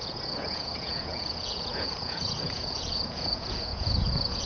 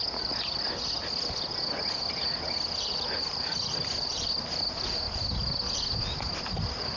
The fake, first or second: first